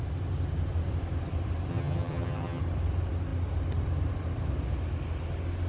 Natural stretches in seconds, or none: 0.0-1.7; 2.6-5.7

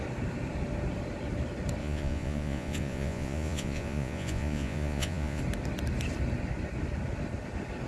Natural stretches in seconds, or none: 0.0-1.8; 5.4-7.9

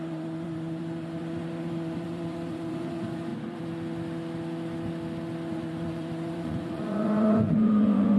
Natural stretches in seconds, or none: 3.3-5.5

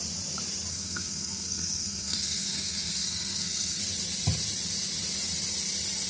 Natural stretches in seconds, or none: 0.0-0.7; 3.8-6.1